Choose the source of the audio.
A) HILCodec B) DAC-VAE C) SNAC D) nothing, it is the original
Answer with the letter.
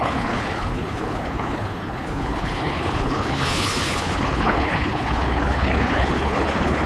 A